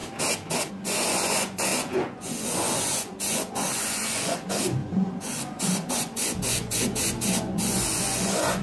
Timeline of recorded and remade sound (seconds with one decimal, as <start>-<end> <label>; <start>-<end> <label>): 0.0-0.7 recorded; 0.7-8.6 remade